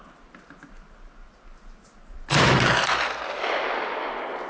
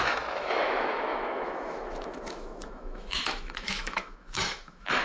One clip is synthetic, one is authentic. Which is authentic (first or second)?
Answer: first